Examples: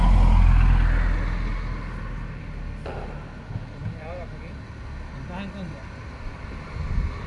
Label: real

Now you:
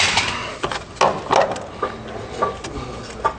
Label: real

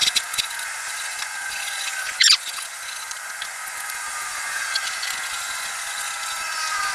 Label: fake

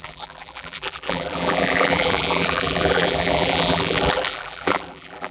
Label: fake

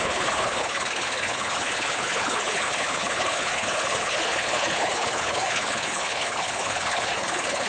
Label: fake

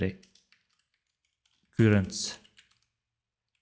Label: real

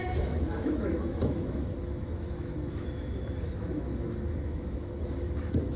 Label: fake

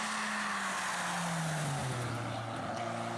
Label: real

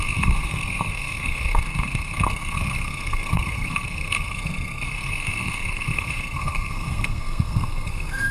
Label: fake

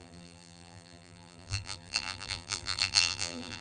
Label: fake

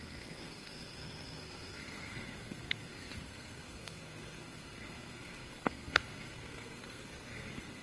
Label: fake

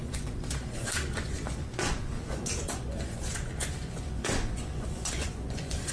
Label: fake